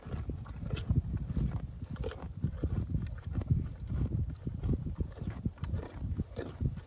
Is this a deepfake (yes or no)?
no